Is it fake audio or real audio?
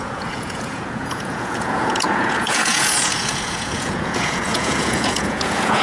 fake